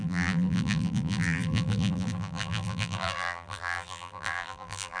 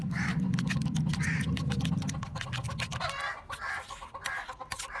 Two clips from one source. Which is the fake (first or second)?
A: first